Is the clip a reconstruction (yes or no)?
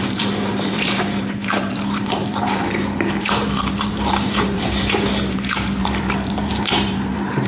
yes